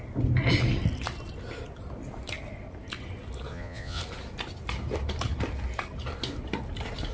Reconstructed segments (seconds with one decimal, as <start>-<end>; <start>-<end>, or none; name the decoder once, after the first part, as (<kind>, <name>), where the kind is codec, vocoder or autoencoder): 3.5-4.0 (vocoder, Vocos)